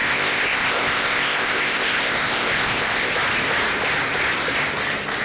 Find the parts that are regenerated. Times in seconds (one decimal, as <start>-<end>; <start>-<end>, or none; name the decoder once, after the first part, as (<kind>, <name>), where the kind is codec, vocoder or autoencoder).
0.0-3.1 (codec, ZipCodec)